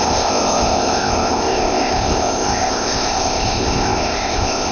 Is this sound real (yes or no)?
no